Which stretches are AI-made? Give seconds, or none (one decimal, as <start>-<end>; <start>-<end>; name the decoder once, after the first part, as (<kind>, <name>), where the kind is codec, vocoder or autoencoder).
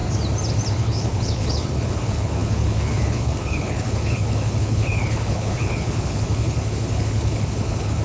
0.7-8.0 (codec, HILCodec)